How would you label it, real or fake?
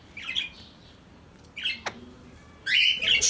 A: real